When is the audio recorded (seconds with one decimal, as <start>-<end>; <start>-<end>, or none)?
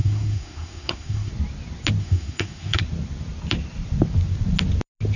1.3-2.0; 2.8-5.2